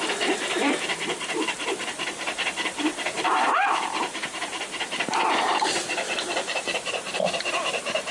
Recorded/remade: remade